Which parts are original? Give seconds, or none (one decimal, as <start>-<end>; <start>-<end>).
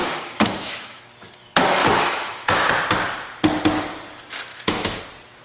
1.0-1.8; 2.7-4.5; 5.0-5.4